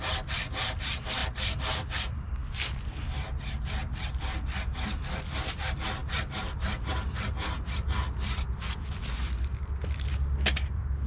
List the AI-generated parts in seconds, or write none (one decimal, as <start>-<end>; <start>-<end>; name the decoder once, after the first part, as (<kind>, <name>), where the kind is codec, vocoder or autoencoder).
none